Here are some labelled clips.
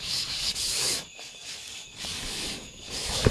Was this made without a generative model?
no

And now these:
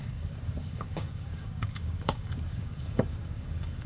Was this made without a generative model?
no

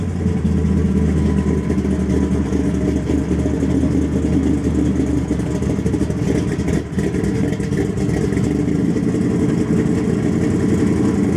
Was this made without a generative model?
yes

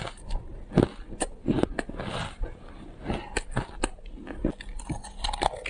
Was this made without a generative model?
yes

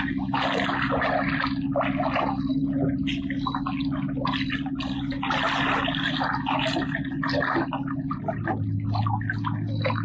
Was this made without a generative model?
yes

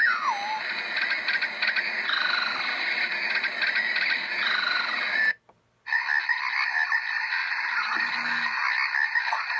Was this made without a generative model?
yes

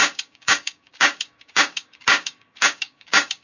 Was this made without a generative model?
no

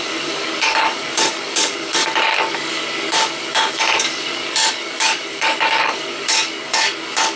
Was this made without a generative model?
no